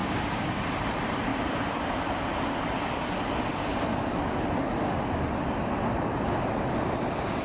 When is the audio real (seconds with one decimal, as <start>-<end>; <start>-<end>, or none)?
0.6-7.4